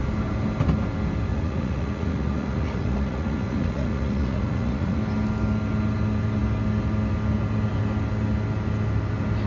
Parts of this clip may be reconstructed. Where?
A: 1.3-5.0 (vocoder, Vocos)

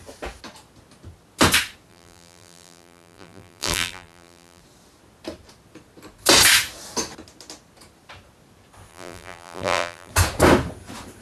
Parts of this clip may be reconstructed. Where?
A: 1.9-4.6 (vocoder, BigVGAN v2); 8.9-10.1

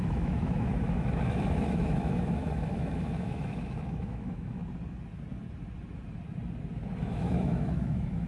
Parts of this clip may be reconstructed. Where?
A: 0.0-4.6 (autoencoder, DAC-VAE); 7.0-8.3

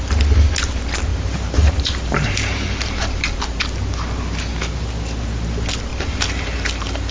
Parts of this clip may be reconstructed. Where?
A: 1.1-3.6 (vocoder, BigVGAN v2); 5.9-7.1

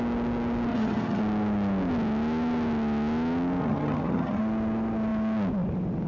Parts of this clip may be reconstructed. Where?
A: 0.7-1.2 (vocoder, HiFi-GAN); 3.6-4.4